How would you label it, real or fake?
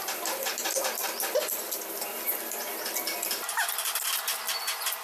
fake